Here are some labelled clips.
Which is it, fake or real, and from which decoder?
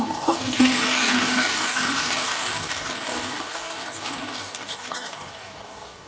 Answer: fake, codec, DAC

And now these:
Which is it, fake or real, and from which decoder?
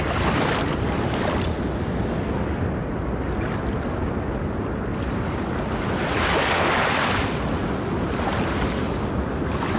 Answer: real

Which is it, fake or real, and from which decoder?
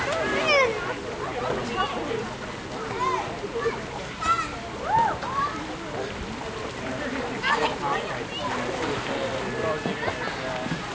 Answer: real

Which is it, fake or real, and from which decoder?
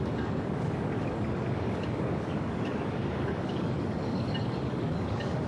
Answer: fake, codec, DAC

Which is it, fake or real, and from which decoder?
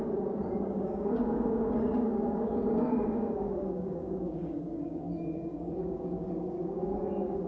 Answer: fake, codec, DAC